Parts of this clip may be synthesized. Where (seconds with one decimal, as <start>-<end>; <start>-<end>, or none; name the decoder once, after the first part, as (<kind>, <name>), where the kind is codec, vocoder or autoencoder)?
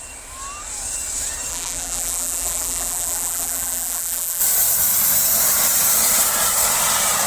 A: 1.5-4.4 (vocoder, BigVGAN v2)